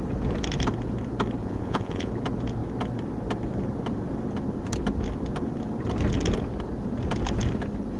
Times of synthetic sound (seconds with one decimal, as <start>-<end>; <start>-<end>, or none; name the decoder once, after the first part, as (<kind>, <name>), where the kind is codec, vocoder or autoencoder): 1.4-2.1 (vocoder, Vocos)